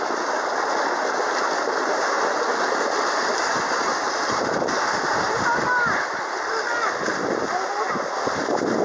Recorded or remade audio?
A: recorded